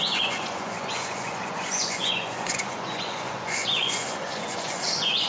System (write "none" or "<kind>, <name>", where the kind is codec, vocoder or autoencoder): vocoder, Vocos